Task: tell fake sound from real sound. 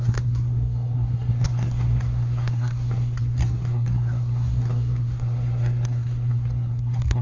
fake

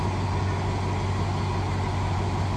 real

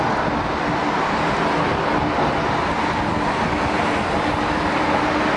real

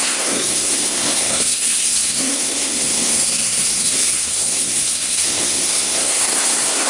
fake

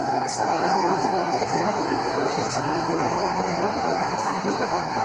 fake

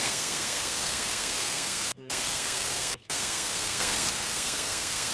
fake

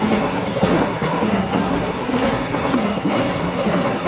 fake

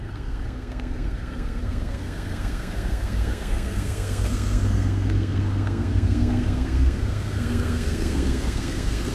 fake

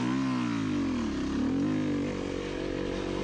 real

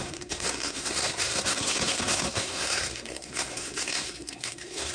fake